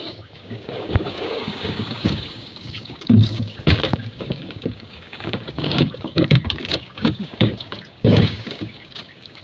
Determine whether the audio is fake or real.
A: fake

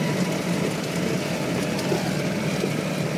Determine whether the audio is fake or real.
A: real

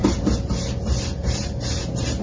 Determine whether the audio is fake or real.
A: real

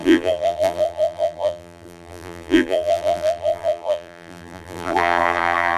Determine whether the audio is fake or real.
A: fake